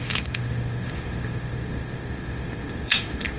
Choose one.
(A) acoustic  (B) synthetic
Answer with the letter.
B